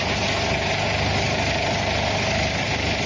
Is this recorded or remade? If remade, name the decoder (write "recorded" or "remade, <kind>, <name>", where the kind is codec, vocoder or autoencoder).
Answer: recorded